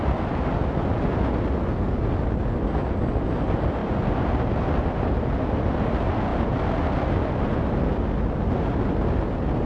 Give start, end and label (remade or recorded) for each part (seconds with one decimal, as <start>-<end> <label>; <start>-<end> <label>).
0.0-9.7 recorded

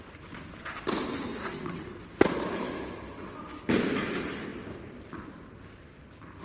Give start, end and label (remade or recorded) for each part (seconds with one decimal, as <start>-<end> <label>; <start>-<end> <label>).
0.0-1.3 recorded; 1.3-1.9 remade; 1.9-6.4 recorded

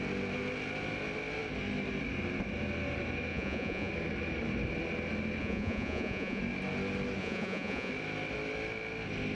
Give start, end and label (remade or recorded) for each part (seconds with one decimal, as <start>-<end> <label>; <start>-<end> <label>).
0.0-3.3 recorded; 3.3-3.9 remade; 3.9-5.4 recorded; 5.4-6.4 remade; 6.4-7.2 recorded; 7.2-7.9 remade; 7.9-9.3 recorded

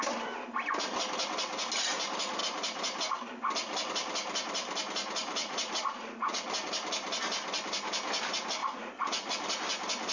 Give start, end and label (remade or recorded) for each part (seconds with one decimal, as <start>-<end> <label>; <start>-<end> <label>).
0.0-5.4 recorded; 5.4-6.4 remade; 6.4-8.6 recorded; 8.6-9.3 remade; 9.3-10.1 recorded

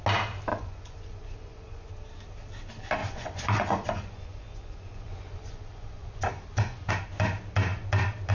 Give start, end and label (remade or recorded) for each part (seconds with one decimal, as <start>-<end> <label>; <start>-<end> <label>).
0.0-0.5 recorded; 0.5-1.9 remade; 1.9-3.0 recorded; 3.0-6.9 remade; 6.9-8.3 recorded

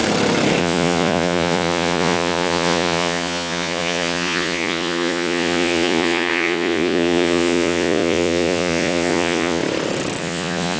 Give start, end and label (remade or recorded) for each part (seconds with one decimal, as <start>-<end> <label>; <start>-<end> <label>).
0.0-0.6 recorded; 0.6-9.6 remade; 9.6-10.2 recorded; 10.2-10.8 remade